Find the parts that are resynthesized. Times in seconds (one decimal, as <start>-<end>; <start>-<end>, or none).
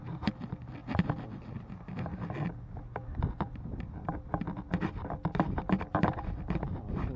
none